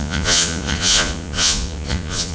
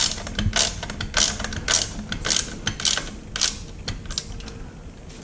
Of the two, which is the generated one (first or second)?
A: first